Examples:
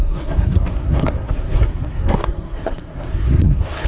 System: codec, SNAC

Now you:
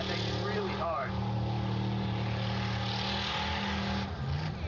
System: none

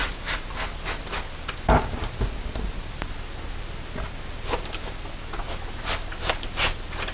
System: none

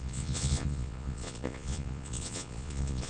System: vocoder, Vocos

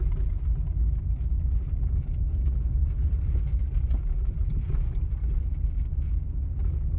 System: none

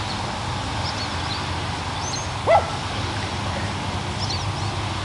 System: none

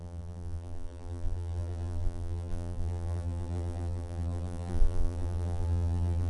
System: vocoder, BigVGAN v2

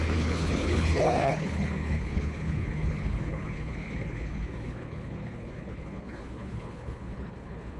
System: codec, HILCodec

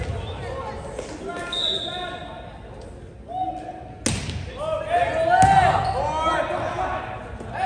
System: none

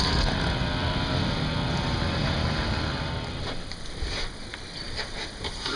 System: none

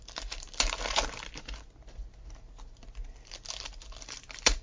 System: none